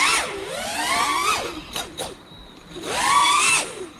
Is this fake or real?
fake